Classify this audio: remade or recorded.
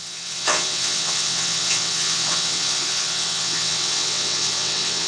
remade